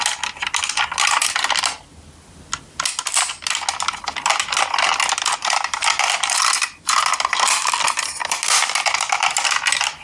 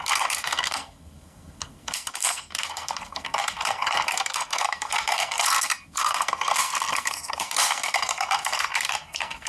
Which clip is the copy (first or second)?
second